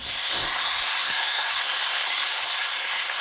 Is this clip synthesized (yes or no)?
yes